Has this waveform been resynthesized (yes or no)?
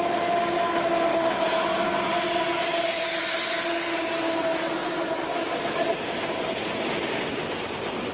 no